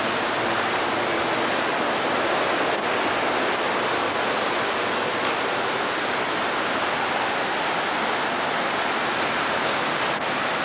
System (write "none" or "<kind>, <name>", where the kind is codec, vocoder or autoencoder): none